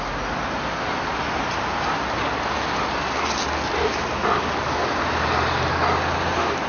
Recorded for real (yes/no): yes